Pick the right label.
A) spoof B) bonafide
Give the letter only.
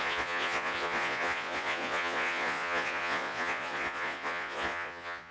A